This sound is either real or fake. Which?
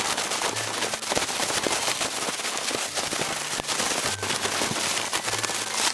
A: real